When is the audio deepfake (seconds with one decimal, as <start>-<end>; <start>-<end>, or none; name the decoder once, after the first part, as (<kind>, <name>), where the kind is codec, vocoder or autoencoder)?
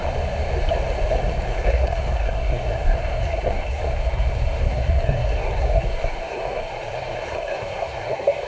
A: 1.1-8.5 (codec, SNAC)